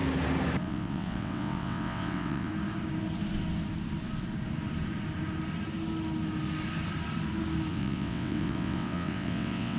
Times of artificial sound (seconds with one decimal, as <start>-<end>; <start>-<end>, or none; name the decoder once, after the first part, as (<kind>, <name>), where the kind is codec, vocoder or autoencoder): 0.6-2.5 (vocoder, WaveNeXt); 7.7-9.8